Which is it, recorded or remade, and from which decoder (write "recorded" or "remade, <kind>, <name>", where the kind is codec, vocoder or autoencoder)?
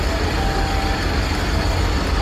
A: recorded